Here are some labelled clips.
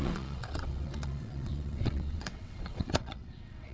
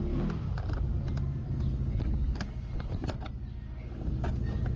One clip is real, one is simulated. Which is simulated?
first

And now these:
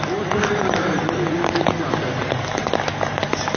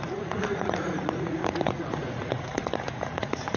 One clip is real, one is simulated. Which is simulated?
second